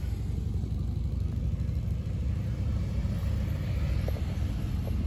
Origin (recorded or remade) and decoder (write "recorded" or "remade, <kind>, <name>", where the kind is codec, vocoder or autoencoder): recorded